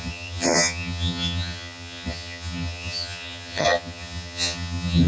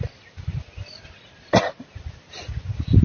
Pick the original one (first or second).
second